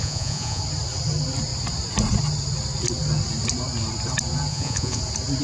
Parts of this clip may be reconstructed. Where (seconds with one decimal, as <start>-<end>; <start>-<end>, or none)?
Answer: 0.0-0.6; 4.5-5.0